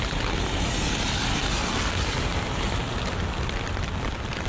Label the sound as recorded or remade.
recorded